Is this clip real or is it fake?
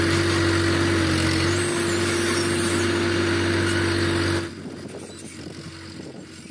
real